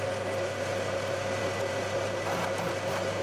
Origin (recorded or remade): recorded